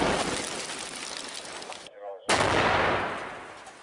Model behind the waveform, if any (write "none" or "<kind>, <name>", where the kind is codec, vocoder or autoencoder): none